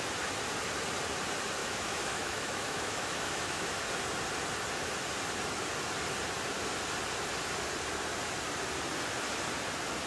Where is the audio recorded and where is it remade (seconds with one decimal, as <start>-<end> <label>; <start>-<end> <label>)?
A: 0.0-1.6 recorded; 1.6-3.8 remade; 3.8-10.1 recorded